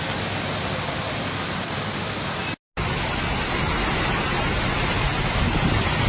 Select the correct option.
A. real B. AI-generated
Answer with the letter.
A